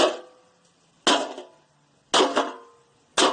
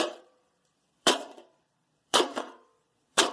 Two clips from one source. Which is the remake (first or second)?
second